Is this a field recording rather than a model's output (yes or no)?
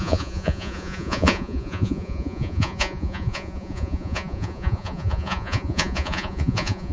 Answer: no